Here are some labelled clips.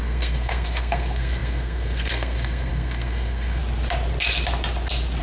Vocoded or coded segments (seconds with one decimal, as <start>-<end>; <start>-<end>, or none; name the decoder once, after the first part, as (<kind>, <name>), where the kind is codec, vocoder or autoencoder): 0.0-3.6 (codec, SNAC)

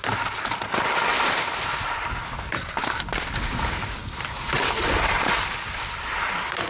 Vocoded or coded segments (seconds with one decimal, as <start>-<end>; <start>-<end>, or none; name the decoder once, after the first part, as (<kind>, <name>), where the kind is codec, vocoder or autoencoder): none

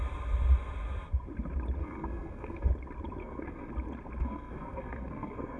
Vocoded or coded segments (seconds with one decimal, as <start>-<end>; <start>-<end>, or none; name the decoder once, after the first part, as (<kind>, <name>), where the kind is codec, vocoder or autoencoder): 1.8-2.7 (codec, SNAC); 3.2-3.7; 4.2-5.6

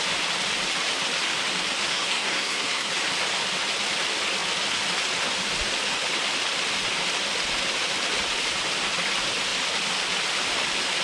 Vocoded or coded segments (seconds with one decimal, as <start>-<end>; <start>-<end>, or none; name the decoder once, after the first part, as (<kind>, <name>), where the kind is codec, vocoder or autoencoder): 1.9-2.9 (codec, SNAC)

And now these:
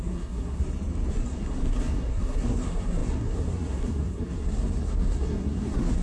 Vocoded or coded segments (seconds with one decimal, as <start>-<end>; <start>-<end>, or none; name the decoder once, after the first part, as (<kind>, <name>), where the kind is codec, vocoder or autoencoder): 0.0-0.6 (codec, SNAC); 1.1-6.0

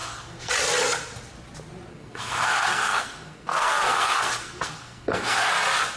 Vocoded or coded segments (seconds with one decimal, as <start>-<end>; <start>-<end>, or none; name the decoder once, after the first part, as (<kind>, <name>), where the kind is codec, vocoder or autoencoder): 0.0-0.5 (codec, SNAC); 1.9-5.5